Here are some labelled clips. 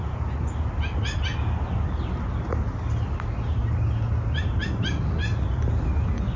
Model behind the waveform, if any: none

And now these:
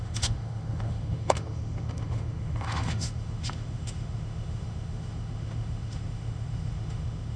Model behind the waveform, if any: autoencoder, DAC-VAE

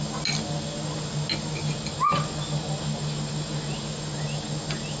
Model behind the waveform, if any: none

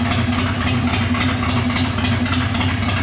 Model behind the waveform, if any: none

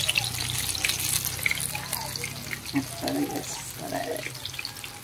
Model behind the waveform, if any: none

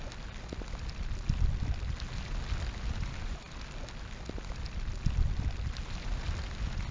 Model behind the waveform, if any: none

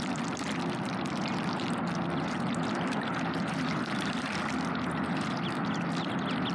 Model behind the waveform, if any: none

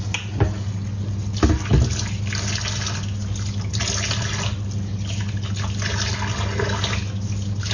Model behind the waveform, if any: none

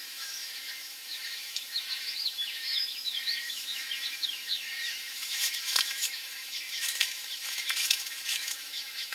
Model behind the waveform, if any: autoencoder, DAC-VAE